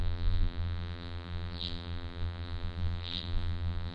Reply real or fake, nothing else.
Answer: fake